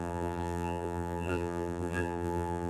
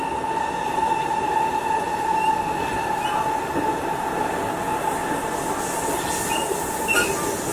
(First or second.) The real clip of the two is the second